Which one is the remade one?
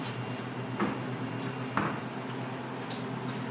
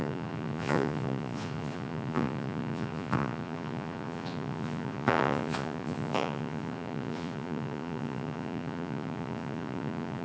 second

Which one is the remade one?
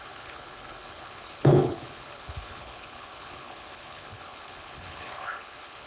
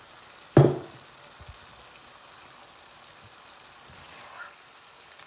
first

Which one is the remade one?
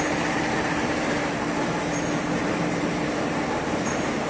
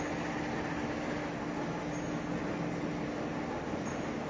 first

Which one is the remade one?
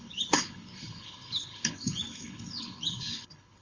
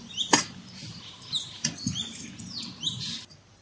first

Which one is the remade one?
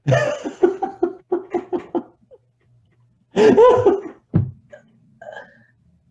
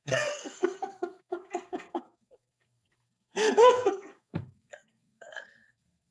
second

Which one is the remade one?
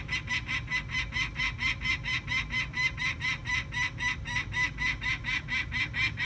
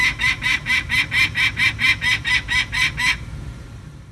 second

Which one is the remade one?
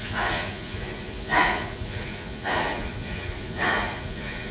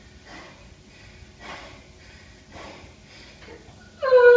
first